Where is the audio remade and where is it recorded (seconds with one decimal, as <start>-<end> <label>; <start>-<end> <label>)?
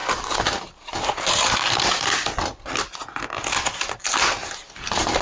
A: 0.0-2.1 remade; 2.1-4.4 recorded; 4.4-5.2 remade